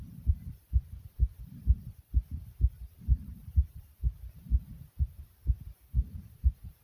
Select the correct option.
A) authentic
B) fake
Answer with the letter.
B